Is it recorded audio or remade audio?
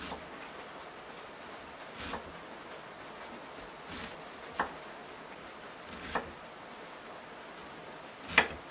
recorded